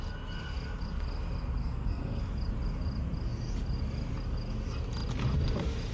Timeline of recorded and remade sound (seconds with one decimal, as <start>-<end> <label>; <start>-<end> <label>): 0.0-1.6 recorded; 1.6-2.2 remade; 2.2-5.9 recorded